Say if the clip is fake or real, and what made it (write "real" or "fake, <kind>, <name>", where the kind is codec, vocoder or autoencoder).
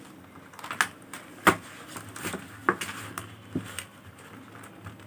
real